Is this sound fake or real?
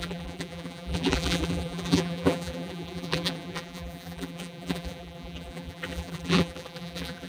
fake